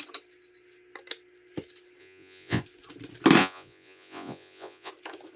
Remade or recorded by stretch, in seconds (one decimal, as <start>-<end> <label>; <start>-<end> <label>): 0.0-2.0 recorded; 2.0-2.6 remade; 2.6-3.4 recorded; 3.4-4.9 remade; 4.9-5.4 recorded